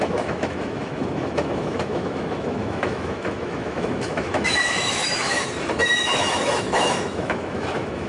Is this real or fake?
fake